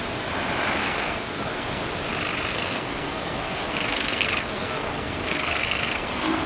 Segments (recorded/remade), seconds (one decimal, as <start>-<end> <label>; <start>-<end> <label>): 0.0-0.8 recorded; 0.8-1.8 remade; 1.8-2.5 recorded; 2.5-6.5 remade